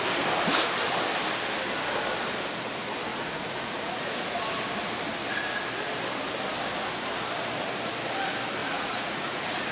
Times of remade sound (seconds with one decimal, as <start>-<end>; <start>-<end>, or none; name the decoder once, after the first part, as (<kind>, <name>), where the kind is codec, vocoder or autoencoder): 3.1-4.4 (vocoder, Vocos); 8.6-9.7